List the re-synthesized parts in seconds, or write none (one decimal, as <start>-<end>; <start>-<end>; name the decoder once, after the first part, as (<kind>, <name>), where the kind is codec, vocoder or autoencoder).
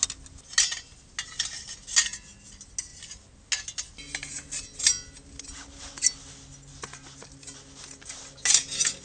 none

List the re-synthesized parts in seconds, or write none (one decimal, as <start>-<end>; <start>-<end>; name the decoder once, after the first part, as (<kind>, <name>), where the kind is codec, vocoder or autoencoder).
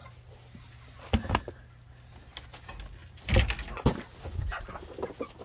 none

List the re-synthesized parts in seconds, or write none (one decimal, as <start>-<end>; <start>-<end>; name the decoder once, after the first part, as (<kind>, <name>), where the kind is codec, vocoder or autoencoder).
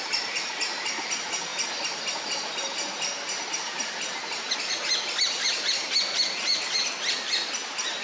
none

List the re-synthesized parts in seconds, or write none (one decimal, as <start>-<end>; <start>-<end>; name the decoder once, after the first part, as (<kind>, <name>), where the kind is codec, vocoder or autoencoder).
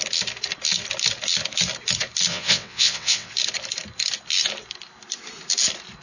2.3-3.3 (vocoder, WaveNeXt)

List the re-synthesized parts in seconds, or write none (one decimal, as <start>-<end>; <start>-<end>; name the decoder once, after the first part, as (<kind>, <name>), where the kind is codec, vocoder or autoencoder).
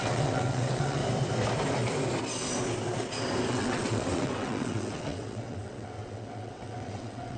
0.0-1.0 (vocoder, WaveNeXt); 3.5-7.4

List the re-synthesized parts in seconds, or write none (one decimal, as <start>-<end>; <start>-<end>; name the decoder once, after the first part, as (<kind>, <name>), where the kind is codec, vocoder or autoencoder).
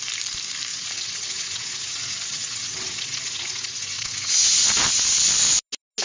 0.7-4.3 (vocoder, WaveNeXt)